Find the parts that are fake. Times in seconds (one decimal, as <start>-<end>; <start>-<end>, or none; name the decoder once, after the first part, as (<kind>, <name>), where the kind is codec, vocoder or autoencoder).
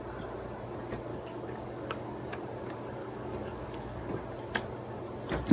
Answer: 1.1-2.3 (codec, DAC); 3.0-4.1